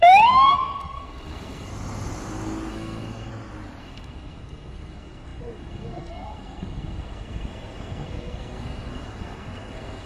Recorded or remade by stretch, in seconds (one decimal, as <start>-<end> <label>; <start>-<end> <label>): 0.0-1.7 remade; 1.7-2.7 recorded; 2.7-3.3 remade; 3.3-3.8 recorded; 3.8-10.1 remade